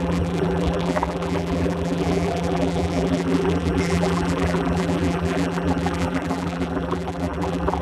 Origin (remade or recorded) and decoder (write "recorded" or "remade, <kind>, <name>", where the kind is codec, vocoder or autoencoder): remade, vocoder, BigVGAN v2